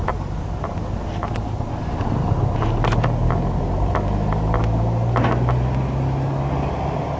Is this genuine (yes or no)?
yes